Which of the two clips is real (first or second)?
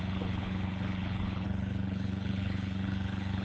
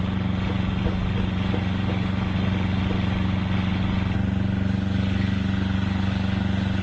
second